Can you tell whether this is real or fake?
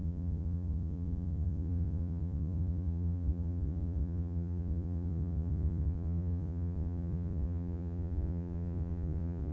fake